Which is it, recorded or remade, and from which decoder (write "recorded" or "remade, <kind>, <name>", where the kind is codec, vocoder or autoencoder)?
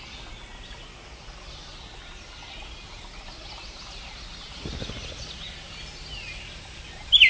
recorded